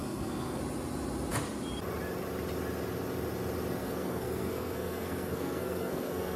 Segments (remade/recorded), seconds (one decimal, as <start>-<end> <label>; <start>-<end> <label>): 0.0-0.6 remade; 0.6-3.8 recorded; 3.8-6.4 remade